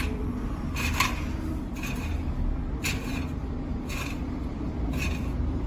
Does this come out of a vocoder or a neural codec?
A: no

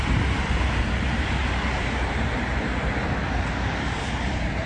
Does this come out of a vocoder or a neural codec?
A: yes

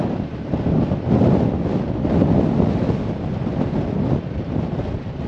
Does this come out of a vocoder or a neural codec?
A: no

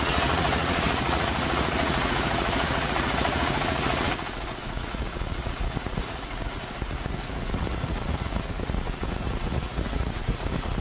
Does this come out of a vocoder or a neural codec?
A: yes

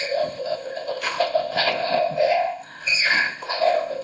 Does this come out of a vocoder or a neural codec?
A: yes